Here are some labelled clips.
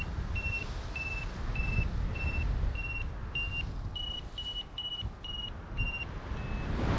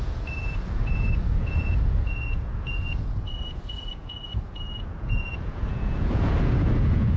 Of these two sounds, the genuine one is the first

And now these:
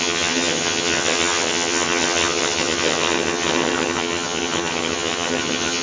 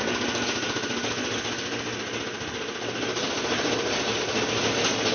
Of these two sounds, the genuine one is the second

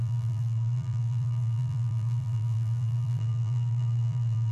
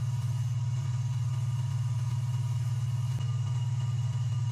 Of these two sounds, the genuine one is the second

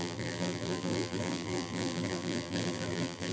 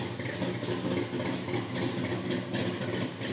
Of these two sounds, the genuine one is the second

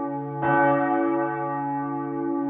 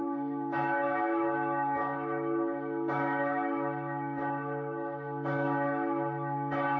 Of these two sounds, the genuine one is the first